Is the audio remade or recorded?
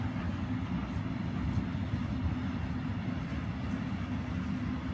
recorded